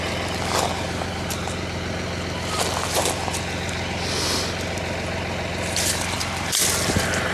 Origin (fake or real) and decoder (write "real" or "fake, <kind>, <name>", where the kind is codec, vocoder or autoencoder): real